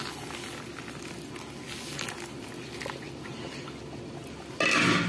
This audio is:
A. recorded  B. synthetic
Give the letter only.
A